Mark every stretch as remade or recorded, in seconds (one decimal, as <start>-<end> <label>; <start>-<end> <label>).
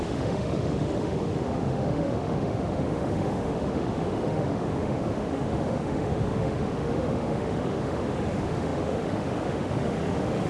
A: 0.0-10.5 remade